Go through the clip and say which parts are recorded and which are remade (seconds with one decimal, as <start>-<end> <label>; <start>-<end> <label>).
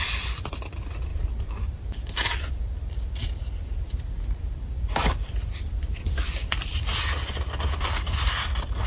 0.0-6.7 remade; 6.7-7.3 recorded; 7.3-8.9 remade